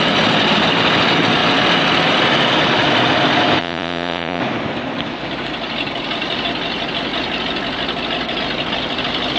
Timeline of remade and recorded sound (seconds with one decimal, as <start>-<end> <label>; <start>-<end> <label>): 0.0-3.6 recorded; 3.6-4.4 remade; 4.4-9.4 recorded